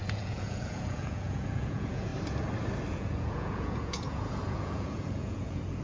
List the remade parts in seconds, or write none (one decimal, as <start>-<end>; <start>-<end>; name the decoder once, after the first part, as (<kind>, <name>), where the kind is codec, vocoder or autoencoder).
0.0-2.1 (vocoder, Vocos); 2.9-5.8